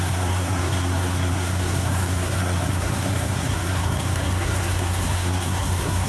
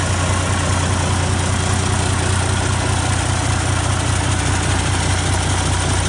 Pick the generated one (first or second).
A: first